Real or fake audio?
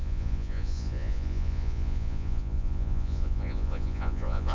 fake